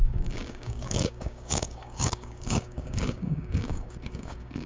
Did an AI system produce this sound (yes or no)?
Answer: yes